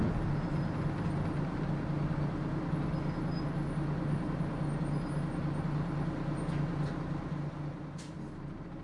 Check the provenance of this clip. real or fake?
real